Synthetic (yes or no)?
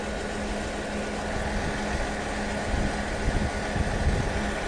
no